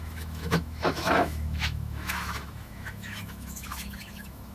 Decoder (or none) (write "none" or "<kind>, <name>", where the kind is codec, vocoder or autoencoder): autoencoder, DAC-VAE